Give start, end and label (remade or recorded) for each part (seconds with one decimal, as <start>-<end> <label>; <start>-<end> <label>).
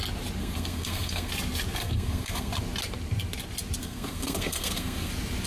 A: 0.0-0.4 recorded; 0.4-1.3 remade; 1.3-1.8 recorded; 1.8-2.5 remade; 2.5-3.8 recorded; 3.8-5.1 remade; 5.1-5.5 recorded